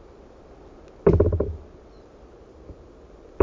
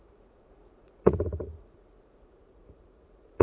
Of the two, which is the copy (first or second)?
second